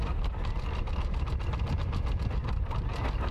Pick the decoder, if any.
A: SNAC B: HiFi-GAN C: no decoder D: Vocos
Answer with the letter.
C